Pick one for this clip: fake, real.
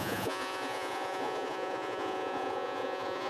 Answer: fake